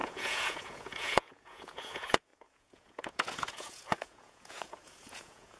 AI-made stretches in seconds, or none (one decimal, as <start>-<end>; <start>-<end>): 0.0-5.6